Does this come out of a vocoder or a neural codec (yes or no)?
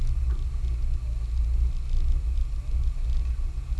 no